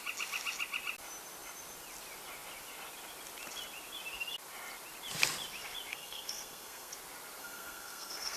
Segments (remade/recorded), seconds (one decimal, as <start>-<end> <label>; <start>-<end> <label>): 0.0-5.9 recorded; 5.9-6.9 remade; 6.9-7.4 recorded; 7.4-8.4 remade